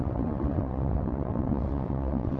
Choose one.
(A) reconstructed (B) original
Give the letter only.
A